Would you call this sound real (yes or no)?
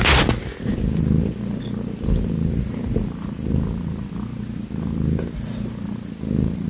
yes